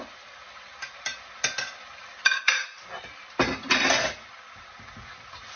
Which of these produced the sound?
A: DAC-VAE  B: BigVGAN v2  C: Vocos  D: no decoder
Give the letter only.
D